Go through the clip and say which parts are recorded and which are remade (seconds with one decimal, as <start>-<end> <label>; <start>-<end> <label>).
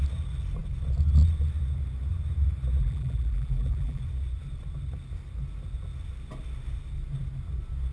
0.0-2.8 recorded; 2.8-4.0 remade; 4.0-7.9 recorded